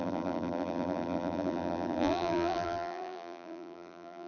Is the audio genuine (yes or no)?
no